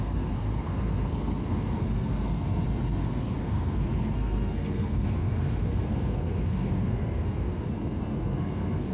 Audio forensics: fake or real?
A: fake